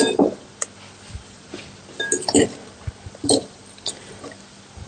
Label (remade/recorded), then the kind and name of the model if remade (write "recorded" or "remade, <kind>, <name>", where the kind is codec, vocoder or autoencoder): recorded